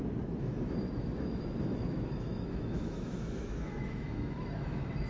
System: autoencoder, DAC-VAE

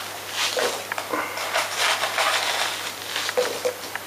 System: none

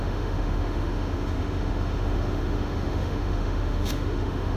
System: autoencoder, DAC-VAE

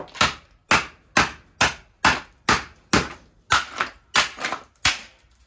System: none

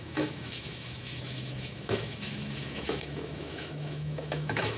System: autoencoder, DAC-VAE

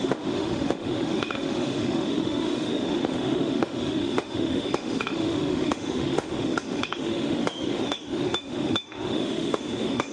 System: autoencoder, DAC-VAE